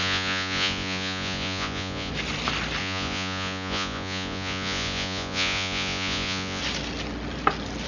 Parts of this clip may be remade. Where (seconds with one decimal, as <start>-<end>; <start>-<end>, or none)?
0.0-2.1; 2.8-6.6